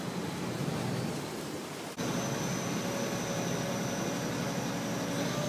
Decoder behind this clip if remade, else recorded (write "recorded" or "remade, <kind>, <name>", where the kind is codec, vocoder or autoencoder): recorded